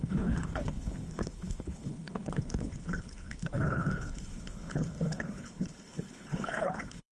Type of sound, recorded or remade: remade